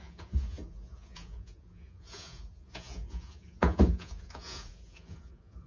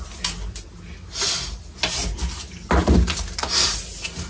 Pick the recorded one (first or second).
second